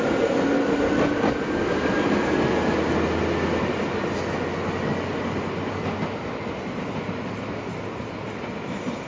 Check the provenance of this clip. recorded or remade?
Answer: recorded